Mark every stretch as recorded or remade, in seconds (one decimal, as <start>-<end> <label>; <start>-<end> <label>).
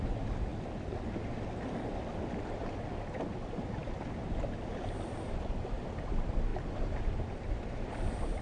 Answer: 0.0-8.4 recorded